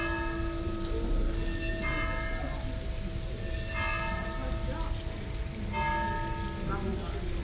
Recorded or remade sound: recorded